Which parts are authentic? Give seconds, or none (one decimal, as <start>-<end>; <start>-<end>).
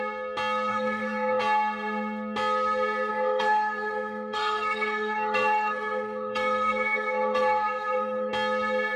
0.0-0.7; 1.4-3.1; 8.3-9.0